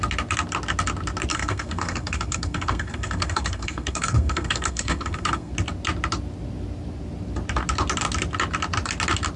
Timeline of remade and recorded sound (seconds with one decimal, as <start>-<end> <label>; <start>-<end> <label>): 0.0-1.3 recorded; 1.3-5.5 remade; 5.5-9.4 recorded